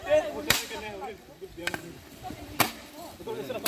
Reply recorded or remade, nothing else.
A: remade